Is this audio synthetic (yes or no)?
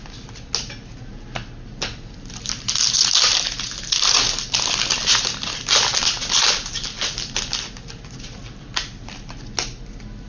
no